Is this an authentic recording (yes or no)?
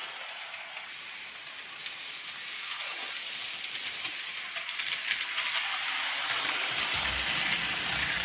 yes